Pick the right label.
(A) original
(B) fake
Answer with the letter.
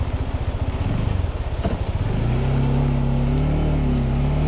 A